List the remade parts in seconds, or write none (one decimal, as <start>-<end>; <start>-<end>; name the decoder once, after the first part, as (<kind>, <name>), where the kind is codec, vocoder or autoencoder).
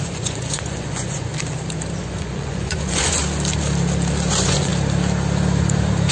0.0-1.3 (vocoder, Vocos); 2.0-3.2; 4.3-4.7